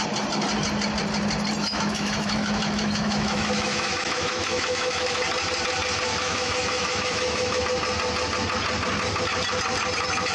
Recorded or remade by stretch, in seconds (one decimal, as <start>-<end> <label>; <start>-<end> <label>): 0.0-1.6 recorded; 1.6-5.2 remade; 5.2-6.1 recorded; 6.1-7.6 remade; 7.6-10.3 recorded